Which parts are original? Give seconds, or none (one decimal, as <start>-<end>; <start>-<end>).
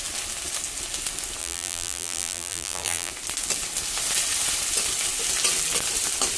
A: 0.0-1.4; 3.1-6.4